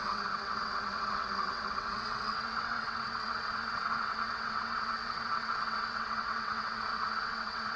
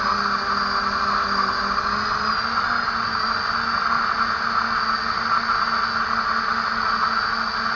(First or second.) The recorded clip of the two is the second